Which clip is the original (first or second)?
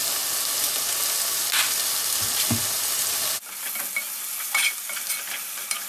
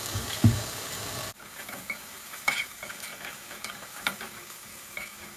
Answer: first